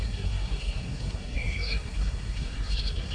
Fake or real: fake